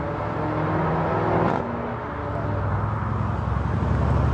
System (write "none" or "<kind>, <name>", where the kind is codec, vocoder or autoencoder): none